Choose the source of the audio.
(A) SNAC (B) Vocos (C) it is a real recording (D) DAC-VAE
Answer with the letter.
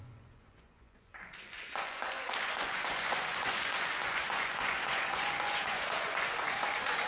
B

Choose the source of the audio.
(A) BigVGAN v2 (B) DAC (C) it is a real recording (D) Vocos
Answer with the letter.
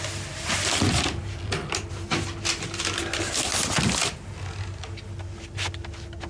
C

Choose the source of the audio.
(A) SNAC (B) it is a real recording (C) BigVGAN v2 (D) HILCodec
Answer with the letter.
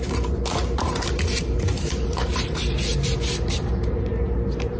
C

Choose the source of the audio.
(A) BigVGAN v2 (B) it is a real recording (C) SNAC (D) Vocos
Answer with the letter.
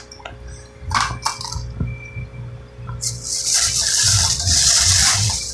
B